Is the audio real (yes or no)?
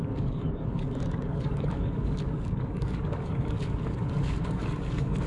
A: no